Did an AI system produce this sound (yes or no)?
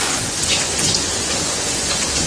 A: yes